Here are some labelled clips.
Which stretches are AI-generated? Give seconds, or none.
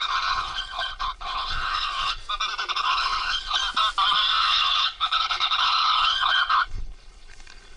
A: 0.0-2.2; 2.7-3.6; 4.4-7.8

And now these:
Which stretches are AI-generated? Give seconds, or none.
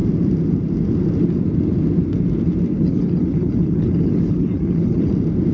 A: 2.7-5.1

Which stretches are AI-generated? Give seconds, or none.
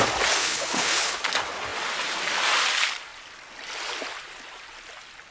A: 0.4-1.2